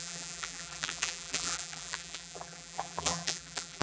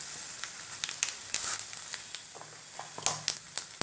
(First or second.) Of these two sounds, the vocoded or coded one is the first